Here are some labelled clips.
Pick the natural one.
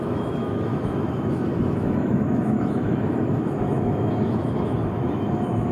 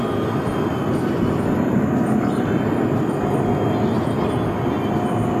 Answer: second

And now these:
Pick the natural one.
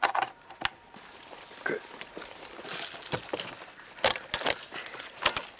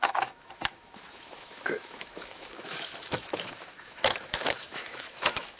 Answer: first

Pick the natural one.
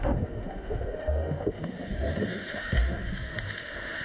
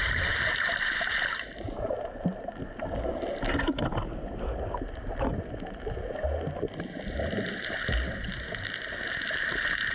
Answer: second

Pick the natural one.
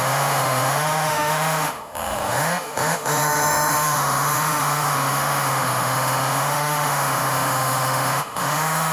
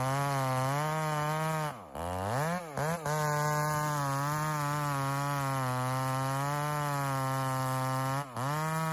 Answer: second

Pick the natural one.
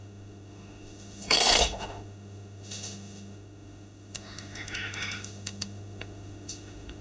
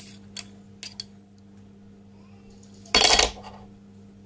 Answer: second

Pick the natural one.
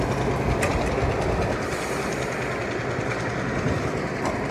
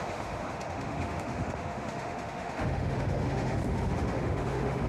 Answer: first